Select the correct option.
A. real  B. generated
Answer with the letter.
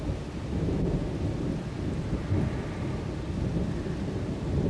A